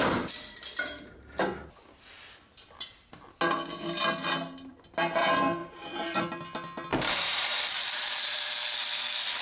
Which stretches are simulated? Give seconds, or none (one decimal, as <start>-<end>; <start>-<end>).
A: 5.6-6.2; 6.9-8.5